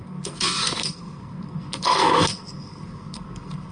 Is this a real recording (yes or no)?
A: no